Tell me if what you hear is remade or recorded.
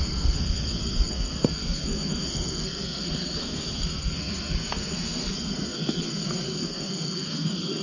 remade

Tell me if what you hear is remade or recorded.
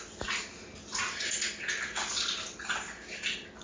recorded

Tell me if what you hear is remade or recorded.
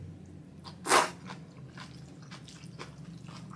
recorded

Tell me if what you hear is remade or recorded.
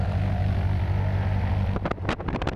recorded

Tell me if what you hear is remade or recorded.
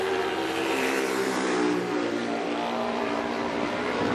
remade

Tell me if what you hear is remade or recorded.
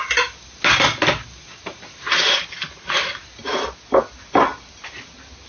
recorded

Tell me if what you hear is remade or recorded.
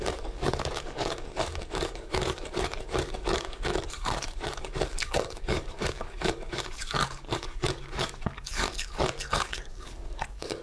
remade